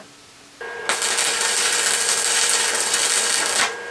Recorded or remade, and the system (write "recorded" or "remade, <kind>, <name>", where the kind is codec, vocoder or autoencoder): recorded